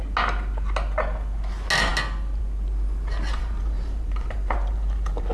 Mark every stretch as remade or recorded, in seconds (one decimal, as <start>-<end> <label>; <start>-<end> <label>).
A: 0.0-3.3 recorded; 3.3-5.3 remade